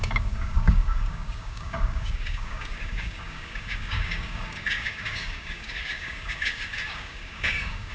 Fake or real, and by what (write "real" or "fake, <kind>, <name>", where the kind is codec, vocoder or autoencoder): fake, codec, DAC